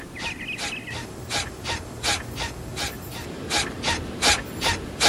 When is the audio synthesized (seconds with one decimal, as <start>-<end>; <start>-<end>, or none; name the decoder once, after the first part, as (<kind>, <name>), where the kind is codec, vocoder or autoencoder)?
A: 2.7-4.4 (vocoder, BigVGAN v2)